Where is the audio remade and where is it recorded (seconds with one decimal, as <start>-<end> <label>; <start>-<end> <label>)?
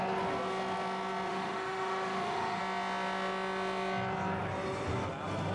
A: 0.0-1.3 recorded; 1.3-2.6 remade; 2.6-5.5 recorded